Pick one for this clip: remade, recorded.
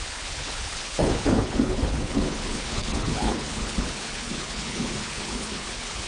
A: remade